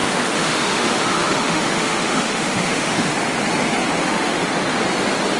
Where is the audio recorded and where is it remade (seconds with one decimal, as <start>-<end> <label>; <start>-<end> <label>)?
0.0-3.2 remade; 3.2-4.0 recorded; 4.0-4.5 remade; 4.5-5.4 recorded